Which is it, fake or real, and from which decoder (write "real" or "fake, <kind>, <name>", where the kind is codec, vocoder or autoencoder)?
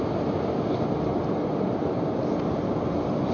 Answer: real